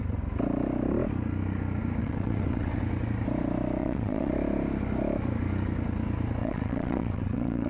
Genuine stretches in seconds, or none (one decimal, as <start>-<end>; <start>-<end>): 0.0-2.0; 2.8-3.8; 4.3-6.4